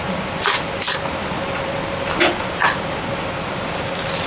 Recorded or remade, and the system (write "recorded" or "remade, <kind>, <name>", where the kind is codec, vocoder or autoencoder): recorded